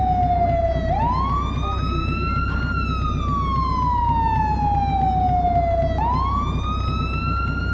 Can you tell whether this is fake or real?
real